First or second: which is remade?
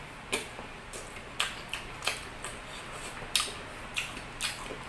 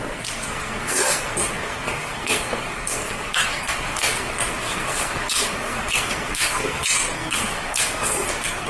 second